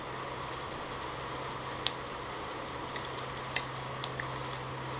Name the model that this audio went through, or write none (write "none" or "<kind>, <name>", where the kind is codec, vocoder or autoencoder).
none